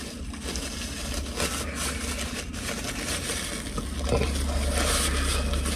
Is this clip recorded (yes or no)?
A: yes